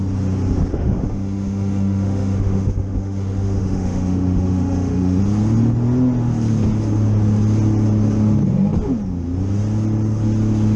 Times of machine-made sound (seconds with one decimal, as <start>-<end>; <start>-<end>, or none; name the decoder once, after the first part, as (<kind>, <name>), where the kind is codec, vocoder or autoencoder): 0.7-5.2 (autoencoder, DAC-VAE)